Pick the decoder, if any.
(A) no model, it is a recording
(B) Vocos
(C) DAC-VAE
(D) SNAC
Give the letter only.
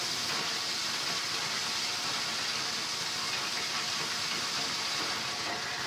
A